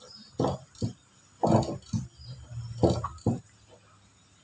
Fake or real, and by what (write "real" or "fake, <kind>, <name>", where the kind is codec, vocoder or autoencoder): real